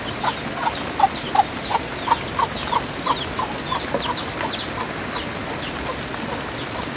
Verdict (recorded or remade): recorded